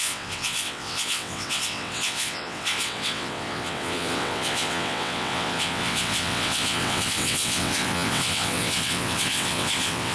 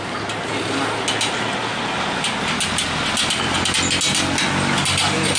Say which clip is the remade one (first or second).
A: first